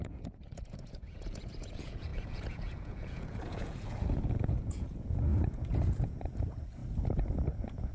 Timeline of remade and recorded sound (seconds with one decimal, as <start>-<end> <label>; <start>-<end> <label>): 0.0-6.8 remade; 6.8-7.5 recorded; 7.5-7.9 remade